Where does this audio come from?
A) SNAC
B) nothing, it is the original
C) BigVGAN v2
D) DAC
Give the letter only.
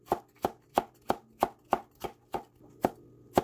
B